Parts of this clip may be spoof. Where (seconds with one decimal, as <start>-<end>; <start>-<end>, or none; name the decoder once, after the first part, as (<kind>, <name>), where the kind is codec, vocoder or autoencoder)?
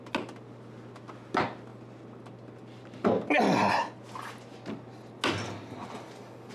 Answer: none